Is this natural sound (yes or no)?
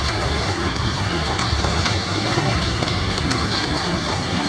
no